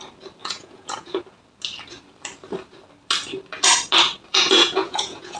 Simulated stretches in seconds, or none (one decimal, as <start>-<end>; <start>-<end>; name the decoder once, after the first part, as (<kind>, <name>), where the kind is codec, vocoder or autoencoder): 0.4-1.2 (vocoder, Vocos); 4.3-5.4

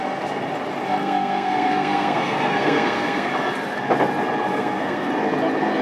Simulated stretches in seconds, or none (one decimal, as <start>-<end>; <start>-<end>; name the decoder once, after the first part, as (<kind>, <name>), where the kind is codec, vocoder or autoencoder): 1.0-3.3 (codec, SNAC); 4.5-5.1

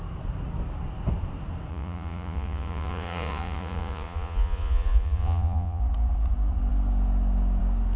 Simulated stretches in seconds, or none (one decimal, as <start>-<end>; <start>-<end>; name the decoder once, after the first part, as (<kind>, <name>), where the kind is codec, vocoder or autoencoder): 1.7-5.8 (vocoder, Vocos)

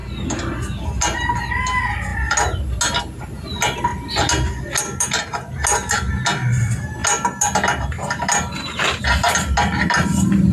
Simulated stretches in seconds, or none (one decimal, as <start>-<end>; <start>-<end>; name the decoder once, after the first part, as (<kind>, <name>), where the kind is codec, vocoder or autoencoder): none

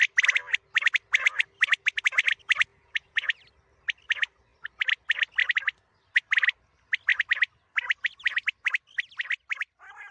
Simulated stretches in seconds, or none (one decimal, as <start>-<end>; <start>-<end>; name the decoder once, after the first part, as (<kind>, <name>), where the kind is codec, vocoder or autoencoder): 2.7-3.4 (vocoder, Vocos)

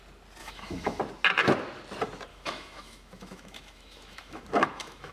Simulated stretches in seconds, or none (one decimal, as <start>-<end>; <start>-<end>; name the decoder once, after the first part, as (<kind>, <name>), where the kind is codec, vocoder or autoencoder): 0.4-1.0 (autoencoder, DAC-VAE); 2.3-5.1

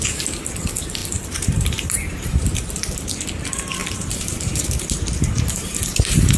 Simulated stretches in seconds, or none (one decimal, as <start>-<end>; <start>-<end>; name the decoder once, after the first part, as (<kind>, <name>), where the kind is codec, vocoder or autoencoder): 1.0-2.6 (vocoder, BigVGAN v2); 3.8-6.4